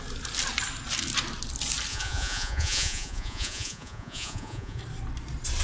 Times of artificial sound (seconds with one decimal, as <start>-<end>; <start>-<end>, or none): 1.9-4.8